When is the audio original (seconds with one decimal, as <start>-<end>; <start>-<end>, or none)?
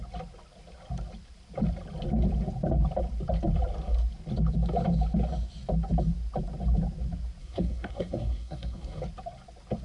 0.0-7.4; 9.0-9.8